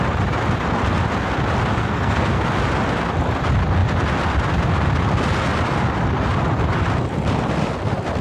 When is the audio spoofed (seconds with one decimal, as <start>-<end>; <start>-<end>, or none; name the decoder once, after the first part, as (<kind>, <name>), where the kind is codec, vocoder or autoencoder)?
1.7-2.4 (codec, SNAC)